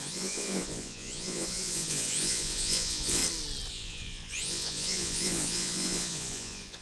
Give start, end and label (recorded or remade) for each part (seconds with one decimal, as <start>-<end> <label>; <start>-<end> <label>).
0.0-3.2 remade; 3.2-3.7 recorded; 3.7-6.8 remade